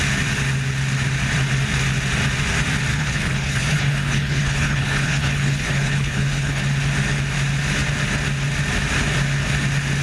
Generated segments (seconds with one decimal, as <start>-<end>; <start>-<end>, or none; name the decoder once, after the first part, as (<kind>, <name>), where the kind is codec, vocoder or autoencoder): 2.9-6.6 (codec, HILCodec)